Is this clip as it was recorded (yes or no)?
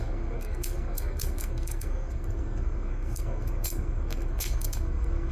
no